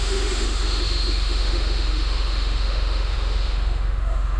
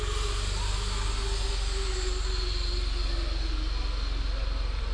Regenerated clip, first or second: first